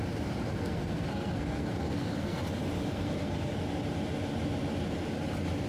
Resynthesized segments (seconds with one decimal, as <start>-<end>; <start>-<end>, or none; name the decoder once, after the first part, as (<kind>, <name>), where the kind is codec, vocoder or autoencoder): 0.5-2.4 (codec, SNAC); 2.9-3.5